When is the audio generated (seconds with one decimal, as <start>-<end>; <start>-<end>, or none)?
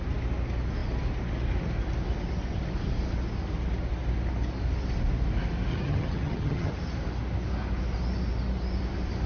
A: 5.7-6.7